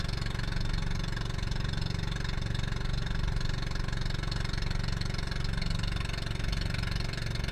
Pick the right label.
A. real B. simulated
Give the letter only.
A